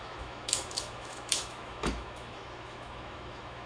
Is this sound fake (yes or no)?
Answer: yes